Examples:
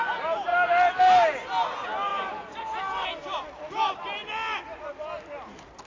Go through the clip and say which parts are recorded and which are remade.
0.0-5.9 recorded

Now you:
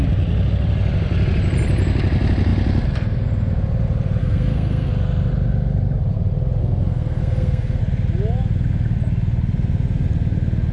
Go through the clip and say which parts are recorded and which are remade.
0.0-4.2 recorded; 4.2-4.9 remade; 4.9-6.6 recorded; 6.6-7.8 remade; 7.8-10.7 recorded

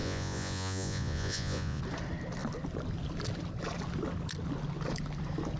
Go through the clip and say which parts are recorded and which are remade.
0.0-1.8 remade; 1.8-5.6 recorded

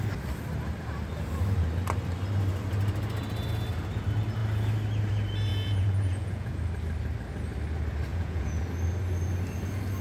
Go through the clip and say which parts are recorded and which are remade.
0.0-5.5 recorded; 5.5-6.6 remade; 6.6-8.1 recorded; 8.1-8.6 remade; 8.6-10.0 recorded

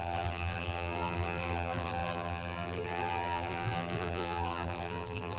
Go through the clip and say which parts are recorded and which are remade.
0.0-5.4 remade

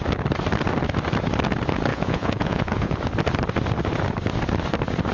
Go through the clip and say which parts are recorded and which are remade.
0.0-1.9 recorded; 1.9-3.0 remade; 3.0-5.1 recorded

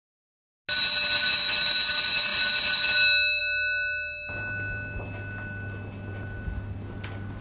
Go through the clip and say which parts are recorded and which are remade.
0.0-7.4 recorded